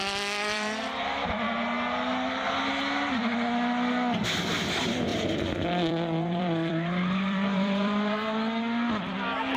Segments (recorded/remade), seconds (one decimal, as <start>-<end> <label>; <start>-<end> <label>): 0.0-1.3 remade; 1.3-5.1 recorded; 5.1-8.6 remade; 8.6-9.6 recorded